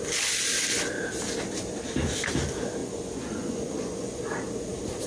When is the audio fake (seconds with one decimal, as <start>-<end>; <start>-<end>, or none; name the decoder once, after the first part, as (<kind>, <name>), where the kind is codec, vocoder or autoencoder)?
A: 2.8-4.2 (vocoder, Vocos)